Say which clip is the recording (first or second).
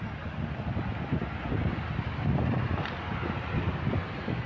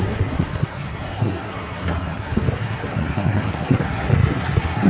first